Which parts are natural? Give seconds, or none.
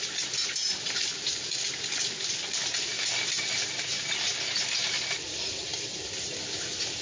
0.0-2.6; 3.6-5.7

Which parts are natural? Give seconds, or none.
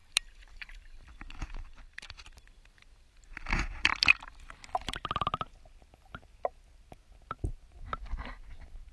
1.0-8.9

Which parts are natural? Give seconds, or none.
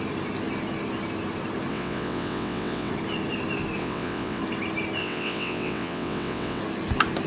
0.0-1.7; 2.9-3.8; 4.4-5.0; 6.6-7.3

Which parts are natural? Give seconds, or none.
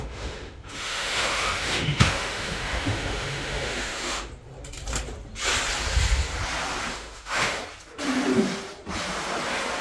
4.3-6.9; 7.6-9.8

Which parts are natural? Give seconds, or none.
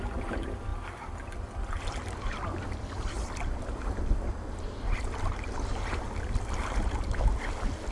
0.0-7.9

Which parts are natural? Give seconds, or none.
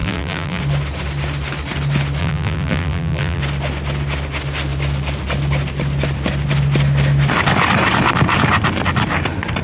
0.6-2.2; 3.4-9.6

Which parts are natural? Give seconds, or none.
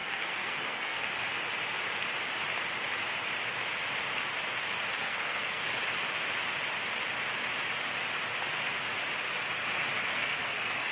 1.1-5.0; 5.6-10.1